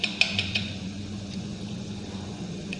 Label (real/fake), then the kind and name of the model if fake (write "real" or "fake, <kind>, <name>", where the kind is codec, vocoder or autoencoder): fake, vocoder, Vocos